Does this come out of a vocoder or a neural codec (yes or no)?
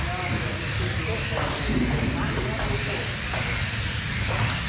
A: no